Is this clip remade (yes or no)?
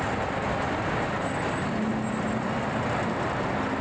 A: no